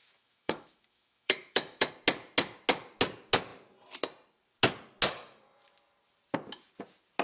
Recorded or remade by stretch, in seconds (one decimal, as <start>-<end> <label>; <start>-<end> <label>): 0.0-1.9 remade; 1.9-7.2 recorded

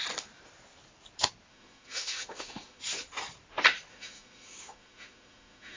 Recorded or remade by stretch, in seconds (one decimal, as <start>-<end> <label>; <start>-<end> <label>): 0.0-1.5 recorded; 1.5-2.8 remade; 2.8-3.9 recorded; 3.9-5.8 remade

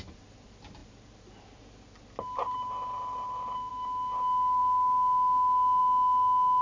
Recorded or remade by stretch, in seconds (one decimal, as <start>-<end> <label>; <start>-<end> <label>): 0.0-6.6 recorded

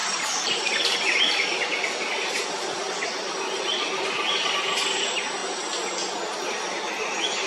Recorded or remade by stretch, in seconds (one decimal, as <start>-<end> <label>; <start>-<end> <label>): 0.0-7.5 recorded

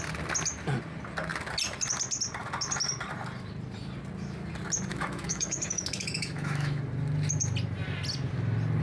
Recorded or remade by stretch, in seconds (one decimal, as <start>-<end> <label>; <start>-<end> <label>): 0.0-4.9 recorded; 4.9-6.8 remade; 6.8-8.8 recorded